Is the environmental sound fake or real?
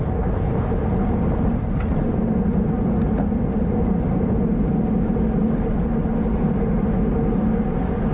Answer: real